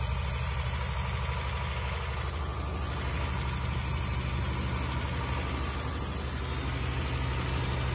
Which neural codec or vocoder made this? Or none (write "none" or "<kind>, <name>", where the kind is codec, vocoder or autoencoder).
none